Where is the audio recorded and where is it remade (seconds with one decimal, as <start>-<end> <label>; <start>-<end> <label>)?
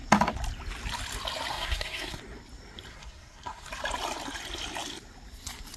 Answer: 0.0-1.5 recorded; 1.5-2.2 remade; 2.2-2.9 recorded; 2.9-3.7 remade; 3.7-5.8 recorded